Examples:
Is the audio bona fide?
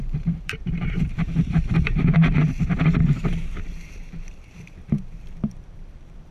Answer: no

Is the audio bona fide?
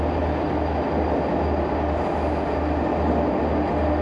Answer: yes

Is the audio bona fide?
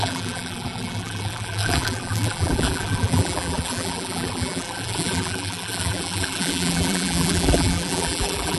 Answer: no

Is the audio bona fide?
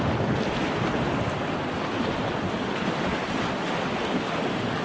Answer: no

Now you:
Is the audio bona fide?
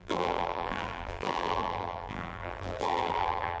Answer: no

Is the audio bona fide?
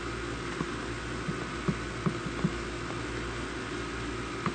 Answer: yes